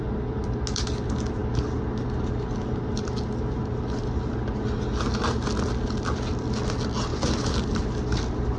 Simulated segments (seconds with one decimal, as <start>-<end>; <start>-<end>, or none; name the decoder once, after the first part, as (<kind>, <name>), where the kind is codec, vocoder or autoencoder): none